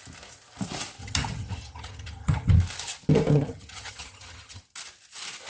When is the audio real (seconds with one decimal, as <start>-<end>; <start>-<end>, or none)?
0.0-1.0; 2.5-3.3; 4.6-5.5